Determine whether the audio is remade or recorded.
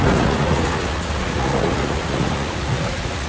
remade